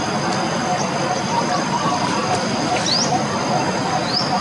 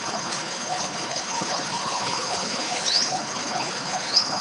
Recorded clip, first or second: first